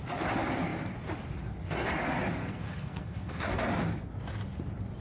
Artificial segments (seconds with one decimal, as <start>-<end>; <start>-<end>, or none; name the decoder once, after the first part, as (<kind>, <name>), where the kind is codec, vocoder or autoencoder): 2.4-3.6 (codec, SNAC)